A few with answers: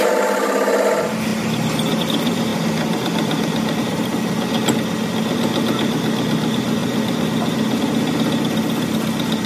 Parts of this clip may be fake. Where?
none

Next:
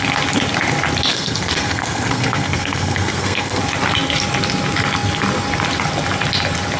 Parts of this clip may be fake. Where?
1.1-3.6 (codec, SNAC)

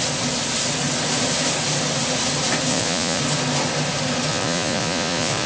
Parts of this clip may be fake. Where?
2.7-3.2 (vocoder, Vocos); 4.3-5.5